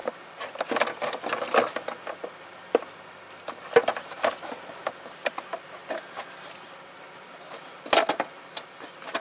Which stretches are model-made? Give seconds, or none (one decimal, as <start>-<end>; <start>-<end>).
none